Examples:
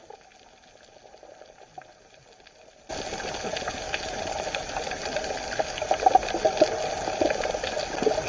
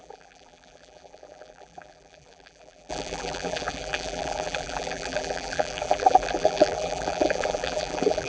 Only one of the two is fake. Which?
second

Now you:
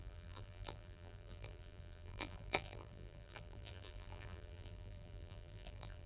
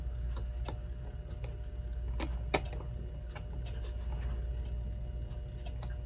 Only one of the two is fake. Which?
first